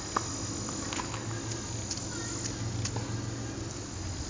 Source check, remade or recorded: recorded